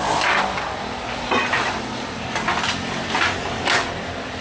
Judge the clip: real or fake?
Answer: real